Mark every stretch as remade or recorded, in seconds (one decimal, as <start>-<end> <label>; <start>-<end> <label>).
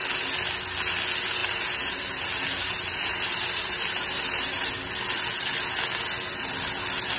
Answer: 0.0-1.4 recorded; 1.4-4.7 remade; 4.7-7.2 recorded